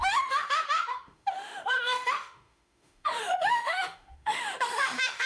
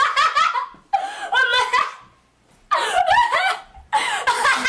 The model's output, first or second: first